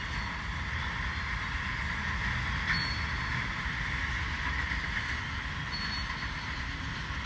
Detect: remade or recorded recorded